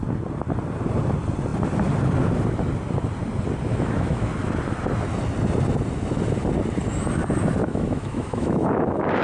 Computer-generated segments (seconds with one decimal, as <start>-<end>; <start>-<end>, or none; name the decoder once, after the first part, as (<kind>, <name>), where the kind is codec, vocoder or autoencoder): 3.7-4.3 (autoencoder, DAC-VAE); 7.6-9.2